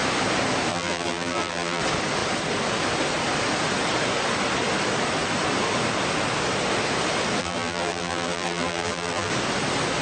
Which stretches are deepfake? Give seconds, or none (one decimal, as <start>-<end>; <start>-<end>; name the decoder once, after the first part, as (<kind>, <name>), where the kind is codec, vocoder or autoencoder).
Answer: 0.7-1.8 (vocoder, BigVGAN v2); 7.4-9.3